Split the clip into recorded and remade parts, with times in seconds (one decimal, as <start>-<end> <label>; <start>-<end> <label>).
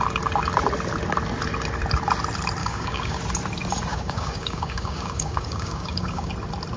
0.0-2.6 recorded; 2.6-3.2 remade; 3.2-3.9 recorded; 3.9-6.3 remade; 6.3-6.8 recorded